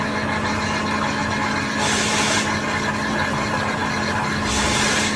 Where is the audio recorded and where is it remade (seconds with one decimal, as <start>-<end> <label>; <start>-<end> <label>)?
0.0-5.2 recorded